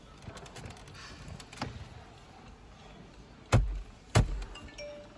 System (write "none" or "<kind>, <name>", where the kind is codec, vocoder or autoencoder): none